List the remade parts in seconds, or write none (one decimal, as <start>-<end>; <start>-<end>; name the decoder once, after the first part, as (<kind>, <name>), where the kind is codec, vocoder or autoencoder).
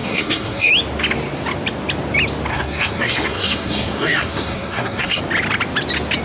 0.0-0.7 (codec, SNAC); 2.5-5.2